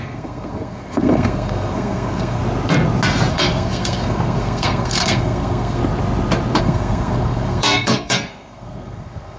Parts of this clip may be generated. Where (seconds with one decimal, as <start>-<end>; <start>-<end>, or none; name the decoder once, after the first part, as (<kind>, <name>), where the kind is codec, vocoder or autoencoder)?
0.0-2.4 (codec, SNAC); 3.3-5.8; 6.6-9.4